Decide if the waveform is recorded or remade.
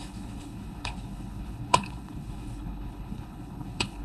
remade